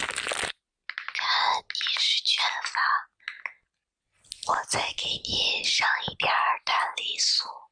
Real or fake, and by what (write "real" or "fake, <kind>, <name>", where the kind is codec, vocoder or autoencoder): real